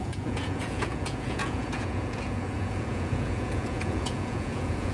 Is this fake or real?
fake